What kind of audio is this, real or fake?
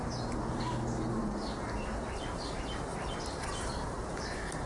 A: real